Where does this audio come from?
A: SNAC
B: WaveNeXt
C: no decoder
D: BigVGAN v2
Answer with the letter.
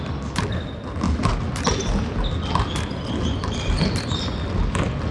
C